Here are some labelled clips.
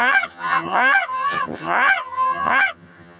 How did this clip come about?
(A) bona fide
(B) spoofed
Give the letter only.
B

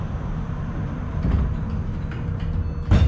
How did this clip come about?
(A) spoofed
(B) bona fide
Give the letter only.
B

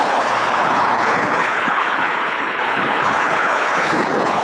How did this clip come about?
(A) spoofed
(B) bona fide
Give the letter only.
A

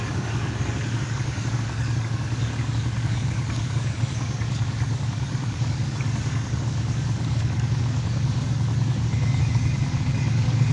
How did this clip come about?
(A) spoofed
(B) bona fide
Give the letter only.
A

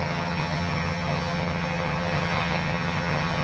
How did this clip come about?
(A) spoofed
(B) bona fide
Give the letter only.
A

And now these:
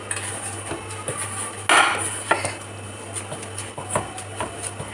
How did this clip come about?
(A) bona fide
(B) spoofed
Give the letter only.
A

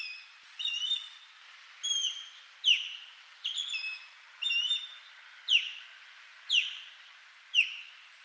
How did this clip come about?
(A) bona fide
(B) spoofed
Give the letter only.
A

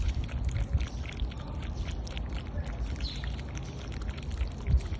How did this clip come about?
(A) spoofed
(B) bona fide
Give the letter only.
B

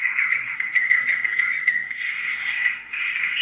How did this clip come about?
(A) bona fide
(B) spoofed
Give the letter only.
B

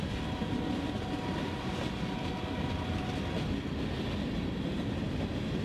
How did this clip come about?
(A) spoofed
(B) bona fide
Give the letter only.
B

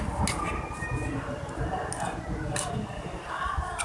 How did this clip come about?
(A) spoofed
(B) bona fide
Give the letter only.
B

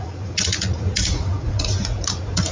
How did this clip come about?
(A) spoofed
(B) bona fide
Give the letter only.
A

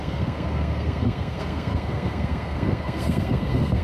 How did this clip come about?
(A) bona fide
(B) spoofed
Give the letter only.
B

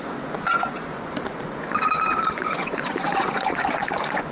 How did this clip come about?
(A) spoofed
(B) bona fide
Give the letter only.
A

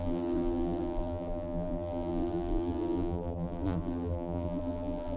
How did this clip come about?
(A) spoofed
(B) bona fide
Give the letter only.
A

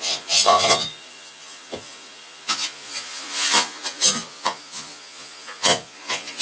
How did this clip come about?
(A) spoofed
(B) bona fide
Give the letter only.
A